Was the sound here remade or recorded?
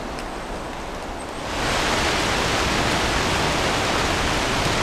recorded